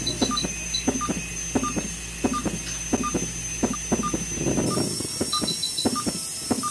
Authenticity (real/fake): real